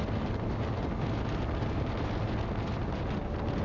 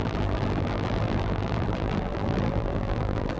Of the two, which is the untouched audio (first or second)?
first